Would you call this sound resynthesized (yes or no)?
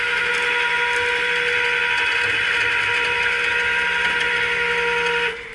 no